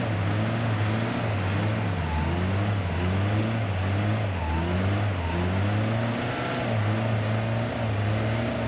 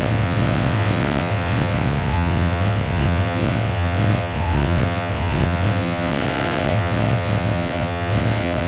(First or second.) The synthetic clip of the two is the second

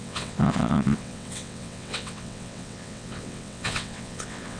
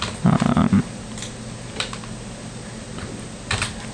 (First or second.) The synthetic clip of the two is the first